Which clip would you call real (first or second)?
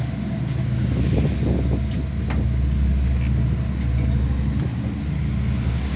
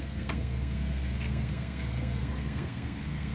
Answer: first